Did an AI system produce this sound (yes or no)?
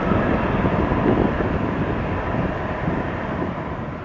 no